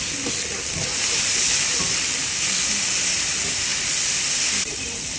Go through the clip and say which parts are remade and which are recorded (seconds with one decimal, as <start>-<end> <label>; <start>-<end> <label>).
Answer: 0.0-1.0 recorded; 1.0-2.2 remade; 2.2-3.7 recorded; 3.7-5.2 remade